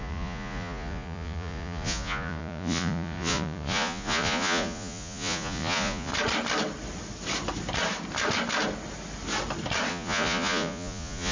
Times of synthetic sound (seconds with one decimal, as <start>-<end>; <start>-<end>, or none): 0.0-6.1; 9.9-11.3